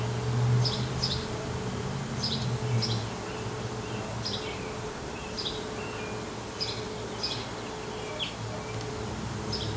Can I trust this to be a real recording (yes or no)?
yes